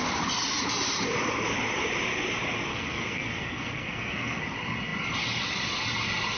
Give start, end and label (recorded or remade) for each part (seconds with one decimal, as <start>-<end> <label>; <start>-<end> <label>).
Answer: 0.0-2.7 recorded; 2.7-4.4 remade; 4.4-6.4 recorded